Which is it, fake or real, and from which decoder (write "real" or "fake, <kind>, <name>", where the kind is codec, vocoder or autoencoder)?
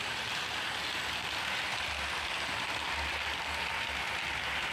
real